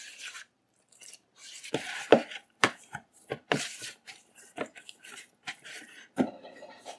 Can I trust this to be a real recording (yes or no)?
no